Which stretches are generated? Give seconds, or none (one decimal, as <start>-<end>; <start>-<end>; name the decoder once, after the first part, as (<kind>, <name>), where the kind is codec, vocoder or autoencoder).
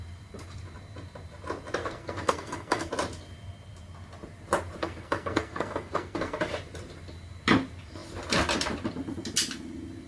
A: 1.8-2.9 (codec, SNAC); 4.8-6.4